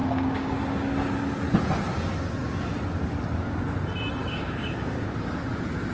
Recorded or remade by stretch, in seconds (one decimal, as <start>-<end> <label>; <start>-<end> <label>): 0.0-0.6 remade; 0.6-4.2 recorded; 4.2-5.0 remade; 5.0-5.9 recorded